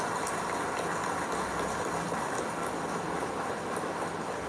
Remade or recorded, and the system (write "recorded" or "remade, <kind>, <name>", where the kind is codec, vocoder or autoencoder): recorded